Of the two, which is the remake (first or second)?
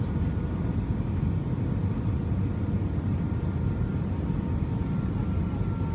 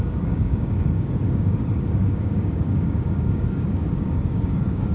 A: second